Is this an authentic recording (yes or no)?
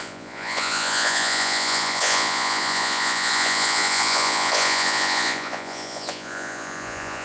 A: no